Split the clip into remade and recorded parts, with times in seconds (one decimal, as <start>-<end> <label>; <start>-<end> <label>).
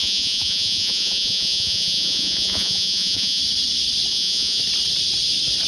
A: 0.0-3.4 remade; 3.4-4.1 recorded; 4.1-4.6 remade; 4.6-5.7 recorded